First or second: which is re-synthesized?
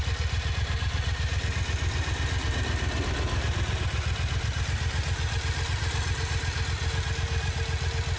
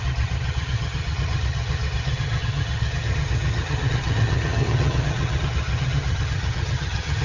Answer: second